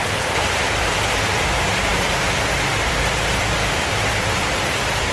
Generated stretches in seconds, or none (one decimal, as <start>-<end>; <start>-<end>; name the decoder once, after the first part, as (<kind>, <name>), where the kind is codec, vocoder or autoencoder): 0.0-5.1 (vocoder, BigVGAN v2)